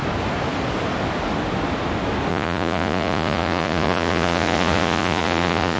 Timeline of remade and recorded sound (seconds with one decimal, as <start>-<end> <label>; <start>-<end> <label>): 0.0-2.3 recorded; 2.3-5.8 remade